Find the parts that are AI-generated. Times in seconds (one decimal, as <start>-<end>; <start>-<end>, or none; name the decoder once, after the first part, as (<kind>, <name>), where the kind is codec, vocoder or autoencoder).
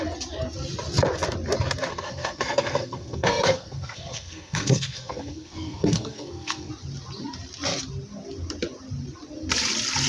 1.9-6.7 (codec, SNAC)